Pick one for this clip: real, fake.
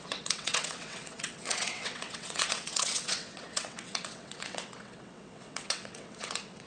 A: fake